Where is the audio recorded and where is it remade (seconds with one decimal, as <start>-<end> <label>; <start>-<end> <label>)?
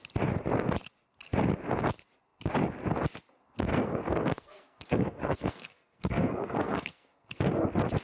0.0-3.7 recorded; 3.7-7.6 remade; 7.6-8.0 recorded